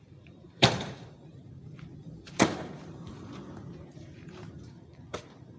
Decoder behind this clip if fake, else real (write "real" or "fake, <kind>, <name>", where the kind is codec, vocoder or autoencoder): fake, vocoder, BigVGAN v2